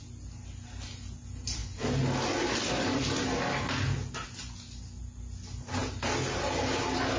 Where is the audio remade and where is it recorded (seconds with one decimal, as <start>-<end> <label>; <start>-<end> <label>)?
0.0-7.2 recorded